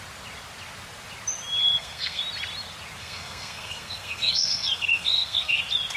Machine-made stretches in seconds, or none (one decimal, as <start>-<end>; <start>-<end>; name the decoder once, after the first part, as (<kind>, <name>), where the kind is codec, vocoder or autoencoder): 1.6-2.2 (codec, SNAC); 3.0-5.6